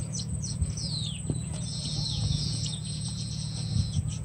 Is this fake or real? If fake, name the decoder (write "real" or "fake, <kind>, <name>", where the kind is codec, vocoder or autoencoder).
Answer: fake, vocoder, Vocos